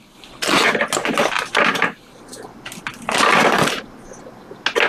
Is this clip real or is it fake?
real